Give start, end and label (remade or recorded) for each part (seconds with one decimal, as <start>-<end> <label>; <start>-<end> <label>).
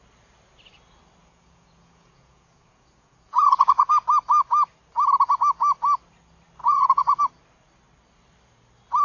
0.0-1.2 recorded; 1.2-3.9 remade; 3.9-6.6 recorded; 6.6-7.2 remade; 7.2-9.0 recorded